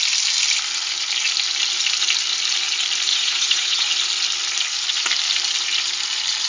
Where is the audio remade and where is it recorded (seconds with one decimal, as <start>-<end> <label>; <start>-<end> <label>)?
0.0-3.1 recorded; 3.1-3.9 remade; 3.9-6.5 recorded